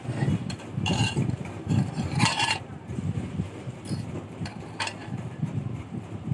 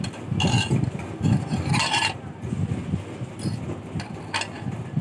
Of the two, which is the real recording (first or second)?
second